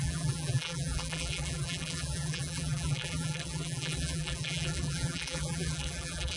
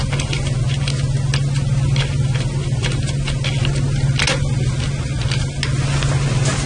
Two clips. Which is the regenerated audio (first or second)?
first